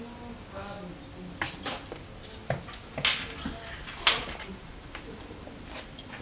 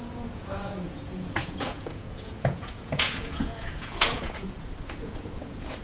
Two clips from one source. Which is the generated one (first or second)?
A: second